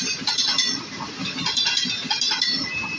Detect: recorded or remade recorded